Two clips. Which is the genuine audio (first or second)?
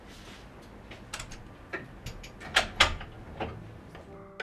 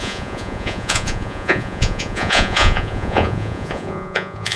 first